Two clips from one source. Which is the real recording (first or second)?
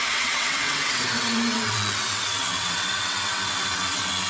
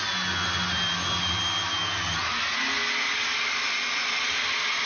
second